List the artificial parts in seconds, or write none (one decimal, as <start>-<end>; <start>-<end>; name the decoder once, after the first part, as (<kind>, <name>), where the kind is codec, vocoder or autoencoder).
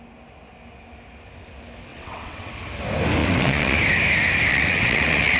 1.9-2.5 (vocoder, WaveNeXt); 3.2-3.8; 4.5-5.4